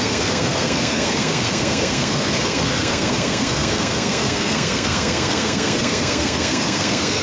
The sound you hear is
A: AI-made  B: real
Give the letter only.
A